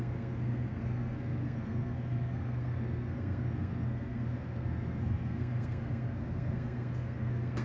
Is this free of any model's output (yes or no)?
no